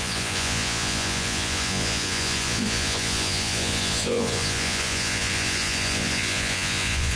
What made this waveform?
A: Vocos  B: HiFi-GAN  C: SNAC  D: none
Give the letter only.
A